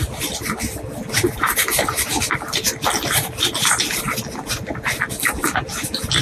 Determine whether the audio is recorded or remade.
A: recorded